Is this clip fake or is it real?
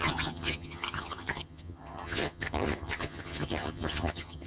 fake